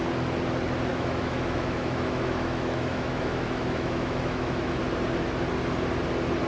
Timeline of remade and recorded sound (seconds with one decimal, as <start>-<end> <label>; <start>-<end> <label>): 0.0-0.9 recorded; 0.9-4.8 remade; 4.8-6.5 recorded